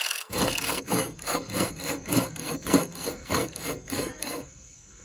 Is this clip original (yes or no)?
no